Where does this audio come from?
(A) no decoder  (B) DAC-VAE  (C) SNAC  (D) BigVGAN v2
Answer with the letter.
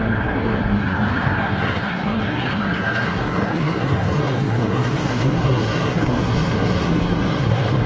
C